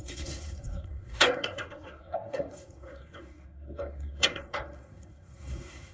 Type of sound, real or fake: fake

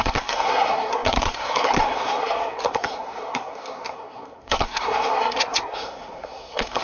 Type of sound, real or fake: fake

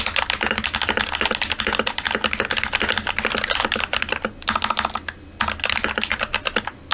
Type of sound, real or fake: real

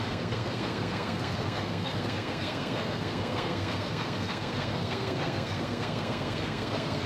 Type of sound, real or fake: fake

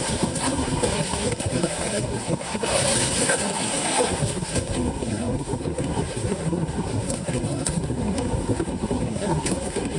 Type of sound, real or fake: fake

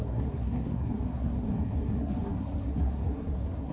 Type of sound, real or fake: fake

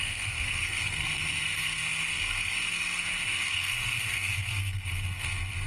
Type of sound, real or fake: fake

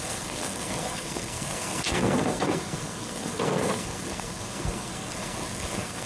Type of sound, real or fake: fake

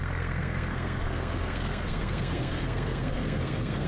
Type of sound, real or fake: fake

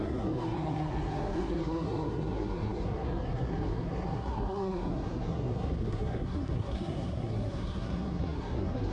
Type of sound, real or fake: fake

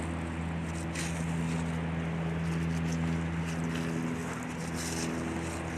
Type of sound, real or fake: real